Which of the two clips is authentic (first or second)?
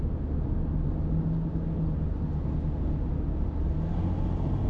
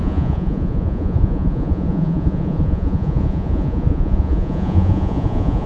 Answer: first